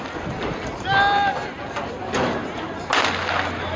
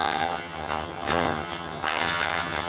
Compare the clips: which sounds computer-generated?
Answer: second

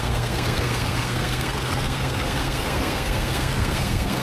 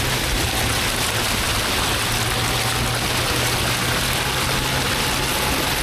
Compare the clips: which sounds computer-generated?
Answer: first